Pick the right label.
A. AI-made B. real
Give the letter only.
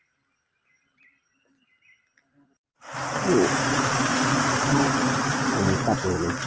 B